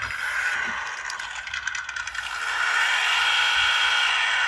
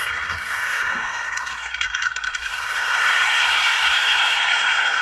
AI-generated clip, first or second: second